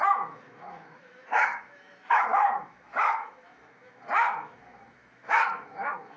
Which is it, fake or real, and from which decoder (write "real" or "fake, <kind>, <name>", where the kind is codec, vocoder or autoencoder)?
fake, autoencoder, DAC-VAE